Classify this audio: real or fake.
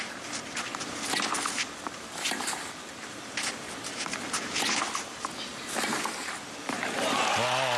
real